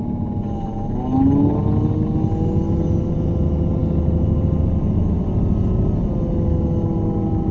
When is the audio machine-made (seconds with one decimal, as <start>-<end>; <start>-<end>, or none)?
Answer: none